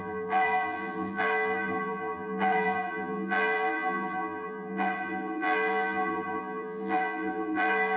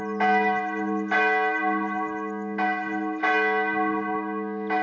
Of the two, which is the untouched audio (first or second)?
second